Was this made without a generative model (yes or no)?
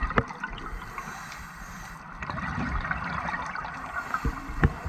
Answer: yes